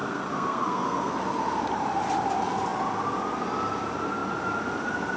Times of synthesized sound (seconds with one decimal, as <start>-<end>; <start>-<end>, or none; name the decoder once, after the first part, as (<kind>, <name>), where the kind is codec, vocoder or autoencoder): 0.0-1.1 (codec, SNAC)